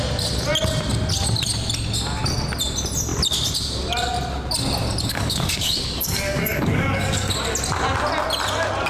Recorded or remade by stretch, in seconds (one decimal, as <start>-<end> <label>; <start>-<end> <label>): 0.0-5.1 recorded; 5.1-7.3 remade; 7.3-8.9 recorded

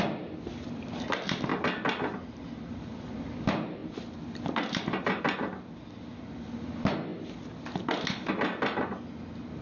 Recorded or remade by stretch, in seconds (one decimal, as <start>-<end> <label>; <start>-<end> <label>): 0.0-9.6 recorded

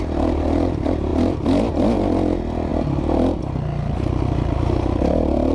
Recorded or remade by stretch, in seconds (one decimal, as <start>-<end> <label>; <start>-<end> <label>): 0.0-5.5 recorded